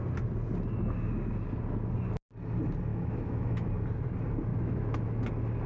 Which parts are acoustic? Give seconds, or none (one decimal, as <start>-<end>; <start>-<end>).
0.0-2.9; 3.7-4.5; 5.2-5.7